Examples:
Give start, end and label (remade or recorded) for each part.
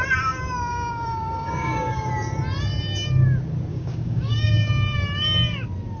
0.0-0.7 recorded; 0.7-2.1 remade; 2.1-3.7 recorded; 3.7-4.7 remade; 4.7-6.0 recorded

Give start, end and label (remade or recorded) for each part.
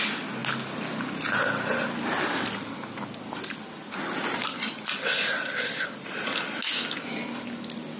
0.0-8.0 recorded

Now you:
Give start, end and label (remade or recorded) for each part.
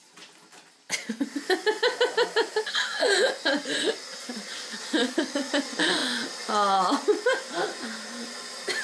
0.0-5.0 recorded; 5.0-5.5 remade; 5.5-8.8 recorded